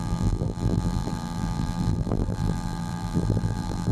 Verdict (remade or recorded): remade